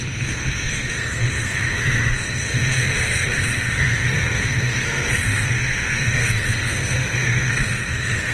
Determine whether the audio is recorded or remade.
remade